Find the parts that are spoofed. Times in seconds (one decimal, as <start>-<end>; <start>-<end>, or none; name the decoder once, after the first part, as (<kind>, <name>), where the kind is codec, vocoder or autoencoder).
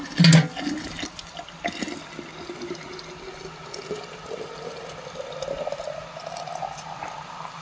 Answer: none